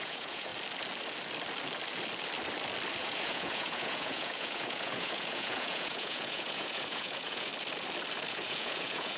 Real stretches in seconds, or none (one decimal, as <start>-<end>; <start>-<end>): 0.5-3.0; 7.5-8.3